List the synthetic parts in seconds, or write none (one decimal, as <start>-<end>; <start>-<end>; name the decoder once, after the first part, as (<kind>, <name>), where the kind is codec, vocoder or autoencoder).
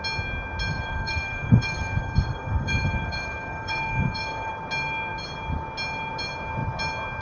0.7-4.5 (codec, DAC)